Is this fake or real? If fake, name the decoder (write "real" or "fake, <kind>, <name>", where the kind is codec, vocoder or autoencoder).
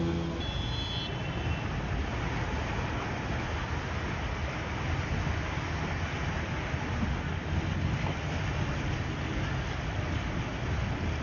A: real